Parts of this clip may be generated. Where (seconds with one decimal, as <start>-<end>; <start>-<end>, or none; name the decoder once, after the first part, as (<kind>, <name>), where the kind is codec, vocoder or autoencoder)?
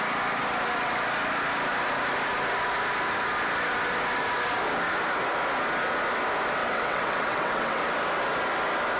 6.6-7.8 (vocoder, WaveNeXt)